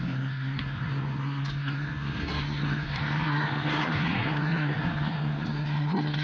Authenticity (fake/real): fake